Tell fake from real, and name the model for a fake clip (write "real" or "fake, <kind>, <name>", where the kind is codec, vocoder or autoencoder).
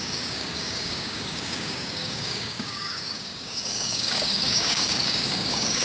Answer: fake, codec, DAC